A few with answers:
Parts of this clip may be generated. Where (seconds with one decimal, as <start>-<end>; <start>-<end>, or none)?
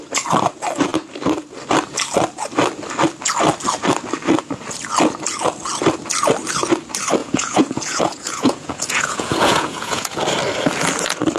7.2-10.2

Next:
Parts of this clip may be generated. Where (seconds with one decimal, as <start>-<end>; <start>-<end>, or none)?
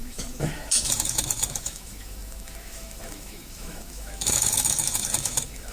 0.0-5.7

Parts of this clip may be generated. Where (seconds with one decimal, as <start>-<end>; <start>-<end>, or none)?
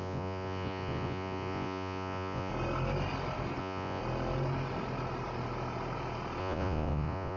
0.0-2.5; 3.6-4.0; 6.4-7.4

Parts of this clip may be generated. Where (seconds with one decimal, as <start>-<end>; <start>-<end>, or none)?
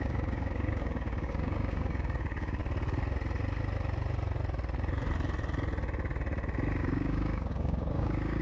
0.0-2.6; 6.8-8.4